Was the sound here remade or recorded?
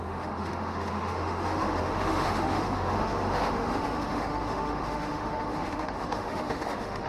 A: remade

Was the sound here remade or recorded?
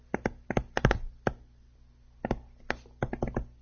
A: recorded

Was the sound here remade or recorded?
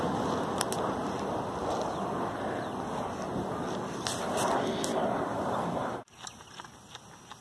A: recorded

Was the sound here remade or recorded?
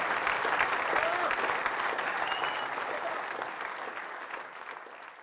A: recorded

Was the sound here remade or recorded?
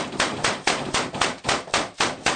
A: remade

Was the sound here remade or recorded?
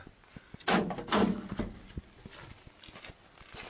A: recorded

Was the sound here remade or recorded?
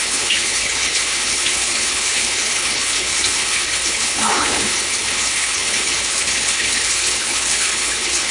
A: remade